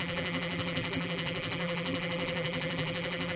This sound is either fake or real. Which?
fake